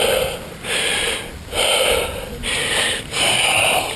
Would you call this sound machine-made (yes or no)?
no